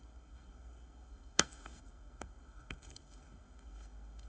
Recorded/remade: remade